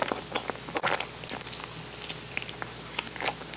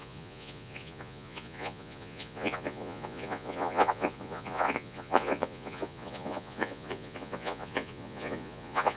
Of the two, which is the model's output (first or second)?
second